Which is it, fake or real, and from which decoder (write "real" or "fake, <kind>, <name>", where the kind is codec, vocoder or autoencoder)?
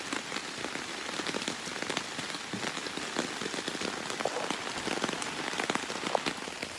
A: fake, vocoder, BigVGAN v2